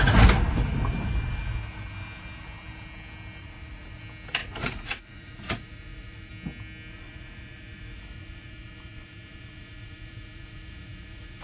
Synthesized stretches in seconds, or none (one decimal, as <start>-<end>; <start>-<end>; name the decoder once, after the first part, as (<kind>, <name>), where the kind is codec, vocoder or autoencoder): 3.4-4.0 (vocoder, Vocos); 4.4-6.3; 6.9-11.4